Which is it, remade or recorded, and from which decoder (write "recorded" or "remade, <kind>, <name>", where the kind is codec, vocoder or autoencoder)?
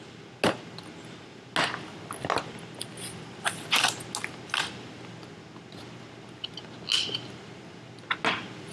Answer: recorded